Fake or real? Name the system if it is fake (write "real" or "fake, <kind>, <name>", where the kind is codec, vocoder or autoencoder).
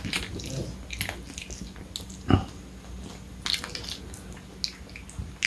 real